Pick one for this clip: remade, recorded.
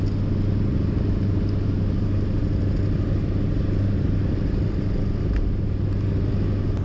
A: recorded